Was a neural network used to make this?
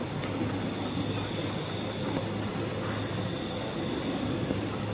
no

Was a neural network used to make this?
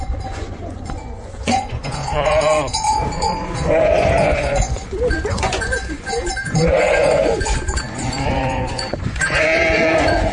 yes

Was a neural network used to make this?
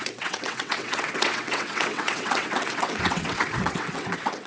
yes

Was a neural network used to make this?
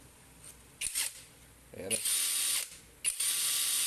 no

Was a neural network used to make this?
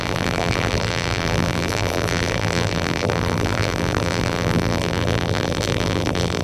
yes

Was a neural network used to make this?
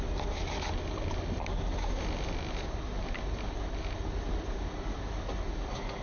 no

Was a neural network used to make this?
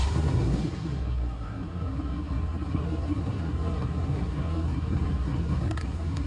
yes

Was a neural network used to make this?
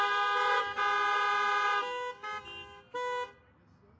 no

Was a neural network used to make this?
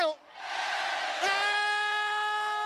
no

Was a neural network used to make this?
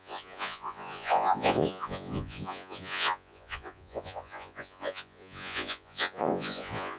yes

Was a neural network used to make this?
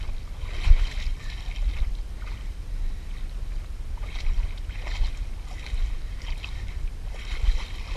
no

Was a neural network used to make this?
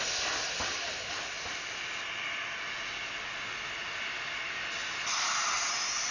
no